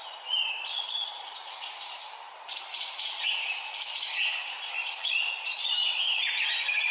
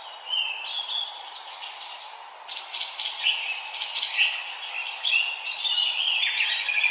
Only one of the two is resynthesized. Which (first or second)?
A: first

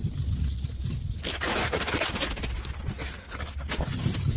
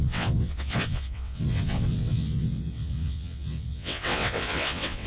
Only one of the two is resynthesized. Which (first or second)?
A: second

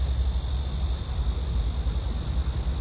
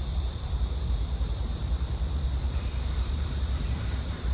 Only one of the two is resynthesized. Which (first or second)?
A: second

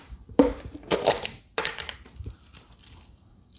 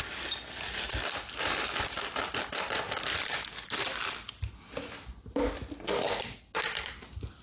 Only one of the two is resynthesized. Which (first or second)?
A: first